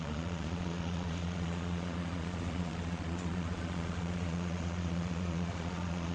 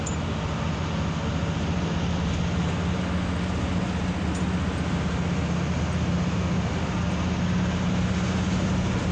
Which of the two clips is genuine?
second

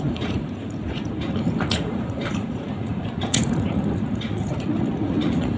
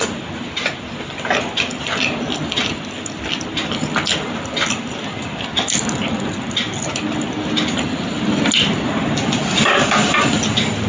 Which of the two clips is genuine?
second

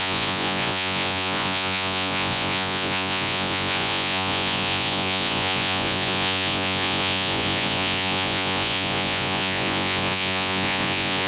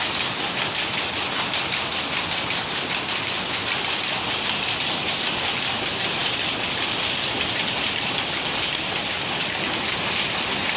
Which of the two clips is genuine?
second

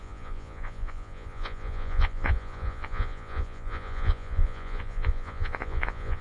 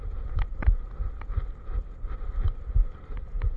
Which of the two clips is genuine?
second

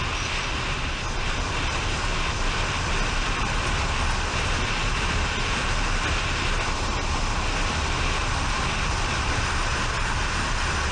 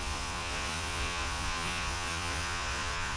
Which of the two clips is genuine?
first